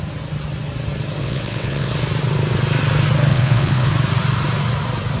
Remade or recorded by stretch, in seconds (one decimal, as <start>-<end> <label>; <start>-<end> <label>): 0.0-1.2 recorded; 1.2-1.9 remade; 1.9-3.3 recorded; 3.3-3.9 remade; 3.9-5.2 recorded